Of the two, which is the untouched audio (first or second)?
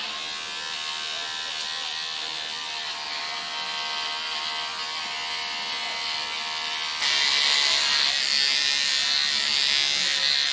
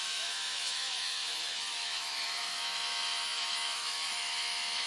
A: first